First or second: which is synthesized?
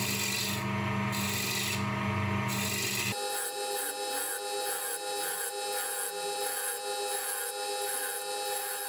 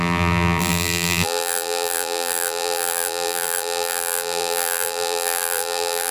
second